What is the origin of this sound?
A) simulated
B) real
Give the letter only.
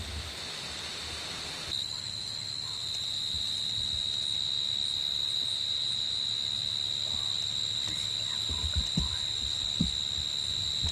A